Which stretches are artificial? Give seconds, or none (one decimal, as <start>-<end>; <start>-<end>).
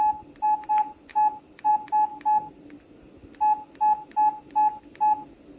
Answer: none